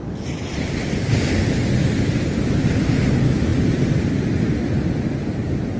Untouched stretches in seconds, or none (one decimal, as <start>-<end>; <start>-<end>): 0.0-5.8